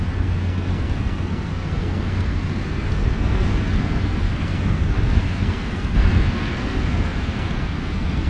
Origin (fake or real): fake